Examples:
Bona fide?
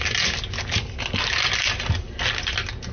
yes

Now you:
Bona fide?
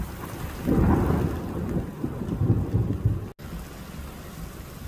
yes